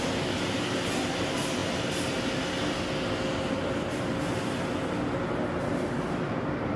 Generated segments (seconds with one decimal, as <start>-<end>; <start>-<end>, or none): none